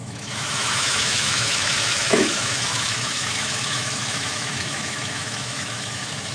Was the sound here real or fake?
fake